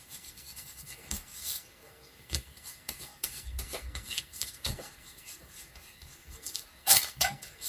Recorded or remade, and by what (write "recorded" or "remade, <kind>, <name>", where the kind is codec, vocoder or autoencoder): remade, codec, SNAC